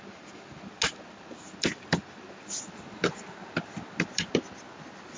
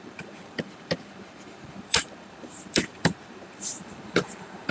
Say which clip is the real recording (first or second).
first